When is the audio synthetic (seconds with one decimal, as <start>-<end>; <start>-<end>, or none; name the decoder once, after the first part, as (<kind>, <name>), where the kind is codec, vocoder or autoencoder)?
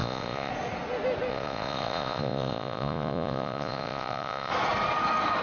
0.0-0.5 (vocoder, Vocos); 1.3-4.5